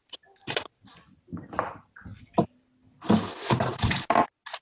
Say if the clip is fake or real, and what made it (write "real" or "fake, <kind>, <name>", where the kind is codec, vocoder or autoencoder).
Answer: real